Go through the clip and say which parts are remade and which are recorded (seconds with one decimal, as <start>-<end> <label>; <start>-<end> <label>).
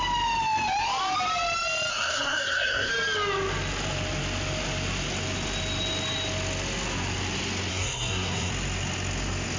0.0-1.9 recorded; 1.9-2.9 remade; 2.9-7.7 recorded; 7.7-8.5 remade; 8.5-9.6 recorded